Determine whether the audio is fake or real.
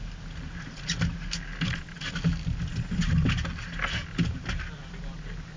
real